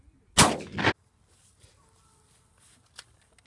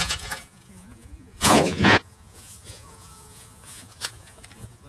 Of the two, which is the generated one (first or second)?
second